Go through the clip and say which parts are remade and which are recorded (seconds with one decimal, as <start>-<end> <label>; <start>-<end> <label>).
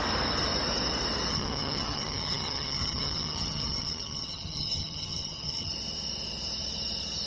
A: 0.0-1.3 recorded; 1.3-5.7 remade; 5.7-7.3 recorded